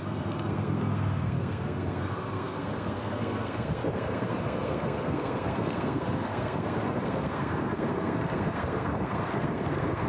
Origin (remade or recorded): remade